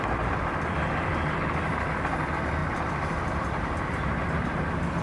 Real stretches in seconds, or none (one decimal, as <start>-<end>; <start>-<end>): 0.0-5.0